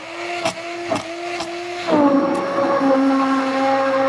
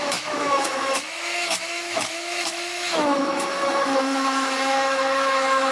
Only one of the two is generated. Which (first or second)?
second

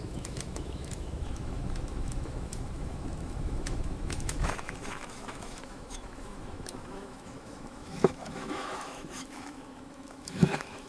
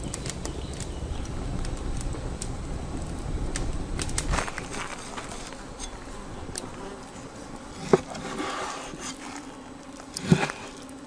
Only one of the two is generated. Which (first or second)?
first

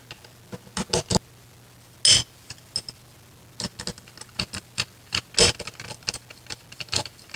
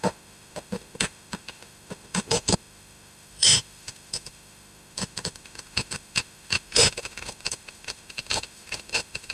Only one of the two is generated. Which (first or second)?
second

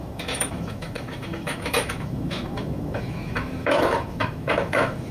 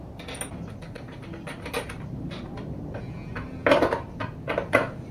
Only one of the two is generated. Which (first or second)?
first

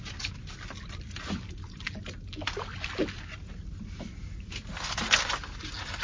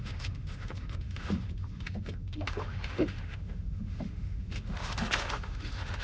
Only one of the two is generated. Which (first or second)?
second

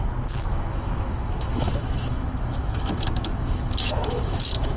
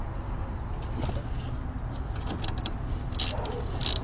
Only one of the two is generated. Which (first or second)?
first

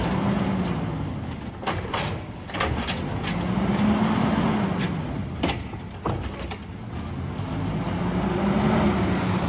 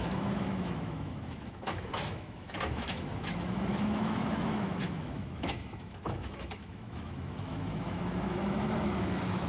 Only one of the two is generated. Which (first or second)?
second